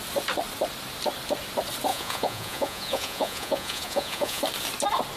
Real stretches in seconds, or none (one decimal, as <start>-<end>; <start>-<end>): 0.0-1.9; 4.4-5.2